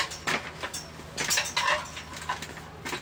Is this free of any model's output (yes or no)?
yes